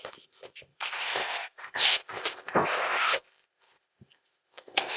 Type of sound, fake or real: fake